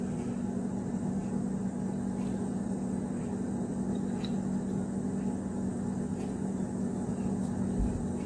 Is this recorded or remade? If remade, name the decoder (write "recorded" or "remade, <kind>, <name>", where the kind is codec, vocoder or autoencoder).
recorded